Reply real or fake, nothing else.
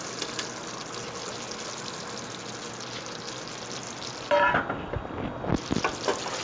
real